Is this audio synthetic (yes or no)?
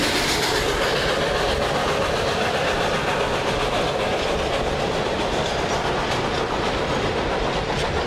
no